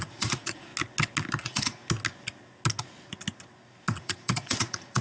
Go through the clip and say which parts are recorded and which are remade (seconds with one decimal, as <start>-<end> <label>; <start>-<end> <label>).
0.0-0.7 remade; 0.7-1.4 recorded; 1.4-1.8 remade; 1.8-3.9 recorded; 3.9-5.0 remade

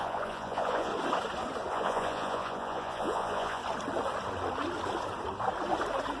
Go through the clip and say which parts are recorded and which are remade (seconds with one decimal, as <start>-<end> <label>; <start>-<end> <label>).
0.0-0.9 remade; 0.9-1.7 recorded; 1.7-3.6 remade; 3.6-6.2 recorded

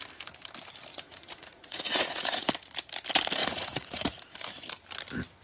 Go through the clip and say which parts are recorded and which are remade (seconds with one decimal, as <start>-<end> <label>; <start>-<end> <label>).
0.0-0.9 recorded; 0.9-2.5 remade; 2.5-3.4 recorded; 3.4-4.2 remade; 4.2-5.4 recorded

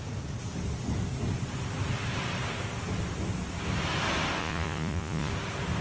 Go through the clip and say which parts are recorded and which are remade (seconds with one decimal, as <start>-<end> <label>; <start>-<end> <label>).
0.0-4.4 recorded; 4.4-5.3 remade; 5.3-5.8 recorded

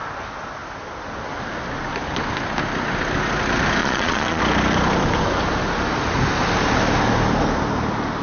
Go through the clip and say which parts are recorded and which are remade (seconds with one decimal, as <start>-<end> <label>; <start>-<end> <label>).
0.0-3.8 recorded; 3.8-4.4 remade; 4.4-8.2 recorded

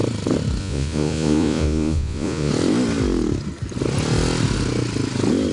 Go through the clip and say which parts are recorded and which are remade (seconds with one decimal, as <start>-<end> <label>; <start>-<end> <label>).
0.0-0.6 recorded; 0.6-2.5 remade; 2.5-5.5 recorded

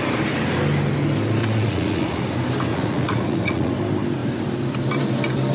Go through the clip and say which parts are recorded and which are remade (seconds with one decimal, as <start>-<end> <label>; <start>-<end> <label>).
0.0-1.4 recorded; 1.4-2.2 remade; 2.2-2.7 recorded; 2.7-3.7 remade; 3.7-5.5 recorded

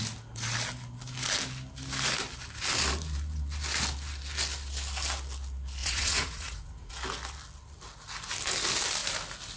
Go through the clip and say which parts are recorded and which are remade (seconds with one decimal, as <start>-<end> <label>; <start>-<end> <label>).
0.0-5.8 recorded; 5.8-6.9 remade; 6.9-9.6 recorded